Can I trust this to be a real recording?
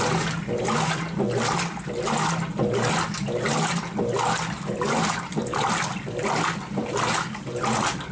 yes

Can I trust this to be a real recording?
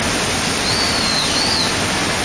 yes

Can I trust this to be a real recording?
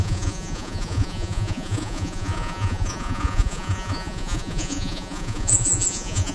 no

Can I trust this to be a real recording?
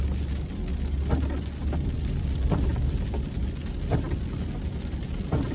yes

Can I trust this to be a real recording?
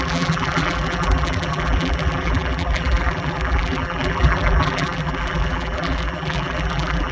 no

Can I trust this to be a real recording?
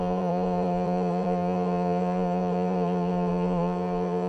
no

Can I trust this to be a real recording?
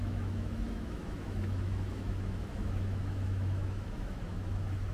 no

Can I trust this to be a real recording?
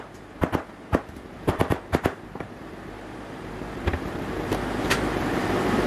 no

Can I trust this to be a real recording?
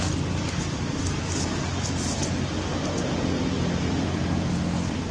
yes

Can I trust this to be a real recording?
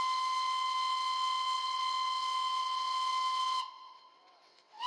no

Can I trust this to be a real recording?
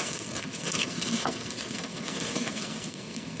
no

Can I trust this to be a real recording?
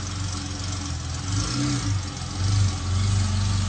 yes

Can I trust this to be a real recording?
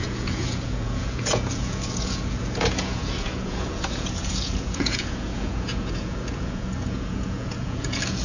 no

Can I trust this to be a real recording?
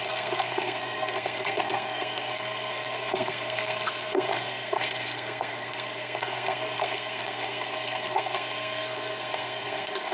no